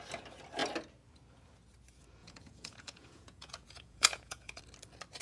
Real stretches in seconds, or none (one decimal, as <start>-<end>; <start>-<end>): 0.0-2.2; 4.6-5.2